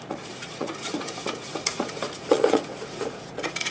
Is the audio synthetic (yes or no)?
yes